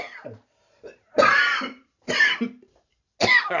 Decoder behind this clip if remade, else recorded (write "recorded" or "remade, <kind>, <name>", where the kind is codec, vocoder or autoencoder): recorded